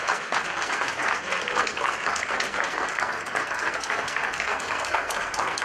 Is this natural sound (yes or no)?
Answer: no